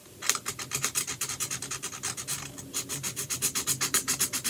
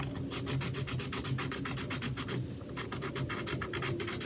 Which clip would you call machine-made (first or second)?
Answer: first